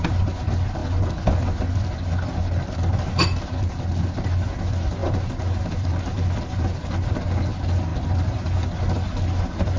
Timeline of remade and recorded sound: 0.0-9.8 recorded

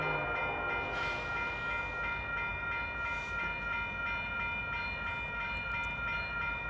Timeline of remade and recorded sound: 0.0-6.7 recorded